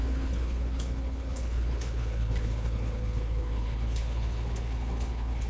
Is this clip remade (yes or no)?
yes